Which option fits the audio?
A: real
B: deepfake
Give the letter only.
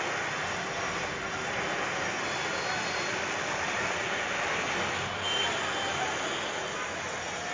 A